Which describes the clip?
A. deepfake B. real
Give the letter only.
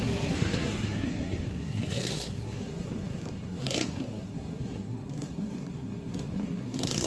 A